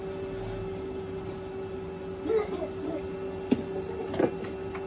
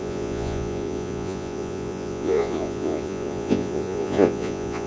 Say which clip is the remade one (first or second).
second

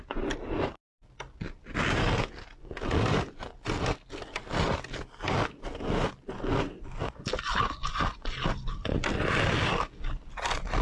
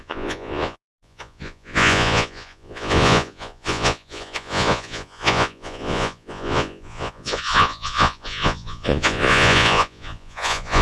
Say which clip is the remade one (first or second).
second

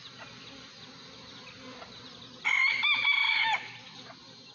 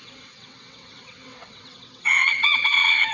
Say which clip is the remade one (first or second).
second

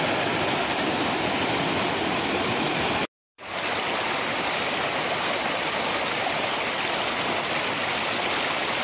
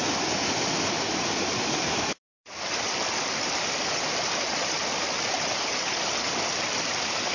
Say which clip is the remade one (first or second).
second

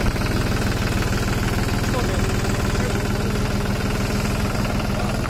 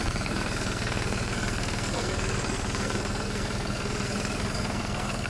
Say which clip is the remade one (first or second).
second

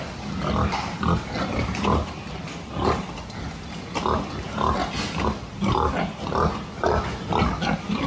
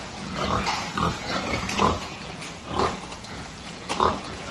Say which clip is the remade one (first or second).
second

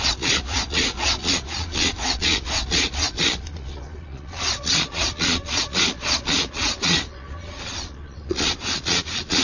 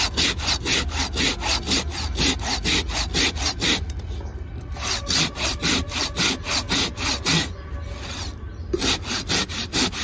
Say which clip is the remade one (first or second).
first